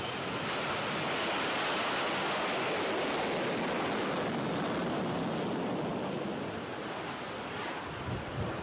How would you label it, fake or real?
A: real